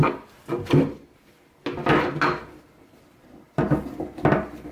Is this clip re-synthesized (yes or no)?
no